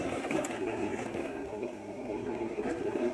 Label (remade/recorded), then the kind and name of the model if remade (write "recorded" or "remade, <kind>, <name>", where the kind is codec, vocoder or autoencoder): remade, codec, SNAC